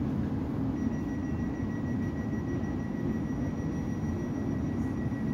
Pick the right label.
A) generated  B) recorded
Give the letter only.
B